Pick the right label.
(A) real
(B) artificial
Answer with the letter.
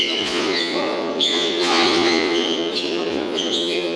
B